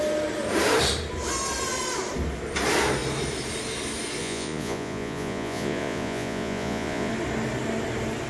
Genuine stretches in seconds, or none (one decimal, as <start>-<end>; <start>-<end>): 0.0-4.2; 7.1-8.3

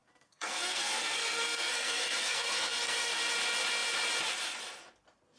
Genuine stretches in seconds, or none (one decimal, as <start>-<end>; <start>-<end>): 3.2-5.4